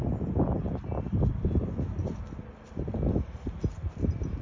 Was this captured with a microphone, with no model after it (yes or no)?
yes